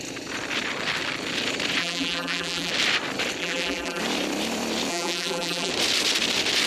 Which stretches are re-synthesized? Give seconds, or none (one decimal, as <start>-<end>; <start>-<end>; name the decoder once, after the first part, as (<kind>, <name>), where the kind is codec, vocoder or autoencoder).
1.8-2.7 (vocoder, BigVGAN v2); 3.4-4.0; 4.9-5.7